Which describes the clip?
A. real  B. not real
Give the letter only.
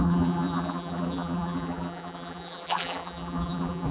B